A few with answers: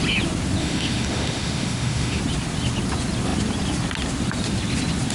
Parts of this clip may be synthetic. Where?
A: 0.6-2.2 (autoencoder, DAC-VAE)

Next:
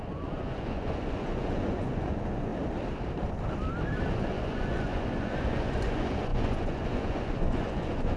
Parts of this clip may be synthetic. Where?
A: 0.0-2.5 (vocoder, Vocos); 4.1-8.2